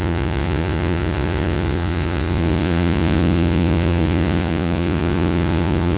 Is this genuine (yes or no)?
no